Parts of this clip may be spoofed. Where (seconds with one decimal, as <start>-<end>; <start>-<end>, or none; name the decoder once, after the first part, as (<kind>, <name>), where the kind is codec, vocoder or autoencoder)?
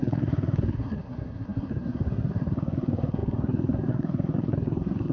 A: 0.0-5.1 (codec, SNAC)